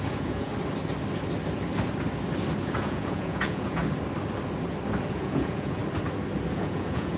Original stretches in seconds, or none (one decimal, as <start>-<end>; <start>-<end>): 0.5-2.6; 3.8-5.1; 5.8-6.5